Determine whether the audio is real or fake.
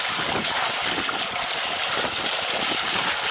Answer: real